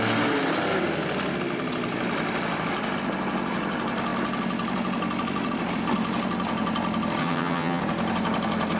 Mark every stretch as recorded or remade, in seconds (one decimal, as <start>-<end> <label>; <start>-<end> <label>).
0.0-7.2 recorded; 7.2-7.8 remade; 7.8-8.8 recorded